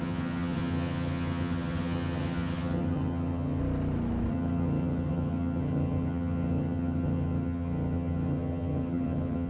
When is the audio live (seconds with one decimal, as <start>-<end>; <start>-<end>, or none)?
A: 3.6-4.3